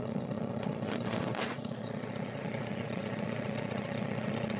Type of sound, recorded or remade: remade